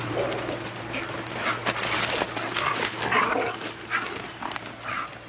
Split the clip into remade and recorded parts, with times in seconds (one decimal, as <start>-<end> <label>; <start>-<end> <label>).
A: 0.0-5.3 recorded